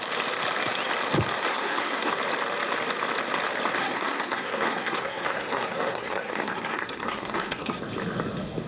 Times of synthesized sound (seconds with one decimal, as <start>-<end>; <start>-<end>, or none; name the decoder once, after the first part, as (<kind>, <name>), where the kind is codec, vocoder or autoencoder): 1.5-2.1 (codec, SNAC); 3.8-7.8